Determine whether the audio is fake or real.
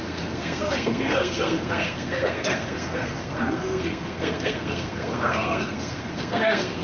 fake